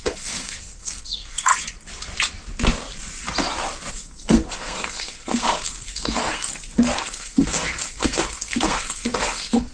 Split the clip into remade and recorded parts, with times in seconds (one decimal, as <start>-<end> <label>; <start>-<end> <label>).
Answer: 0.0-1.5 remade; 1.5-3.9 recorded; 3.9-6.5 remade; 6.5-7.0 recorded; 7.0-9.7 remade